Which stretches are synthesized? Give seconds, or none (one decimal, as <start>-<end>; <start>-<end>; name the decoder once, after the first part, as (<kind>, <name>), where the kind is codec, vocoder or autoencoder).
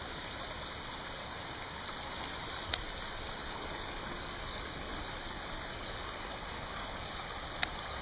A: 3.4-7.1 (codec, DAC)